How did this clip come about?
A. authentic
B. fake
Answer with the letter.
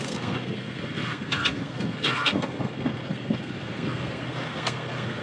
B